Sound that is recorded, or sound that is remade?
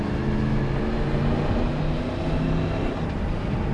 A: recorded